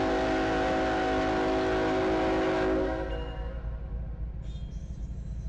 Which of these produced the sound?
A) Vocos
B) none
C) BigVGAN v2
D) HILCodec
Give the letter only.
B